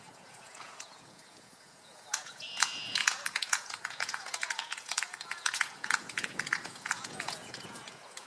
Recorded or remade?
remade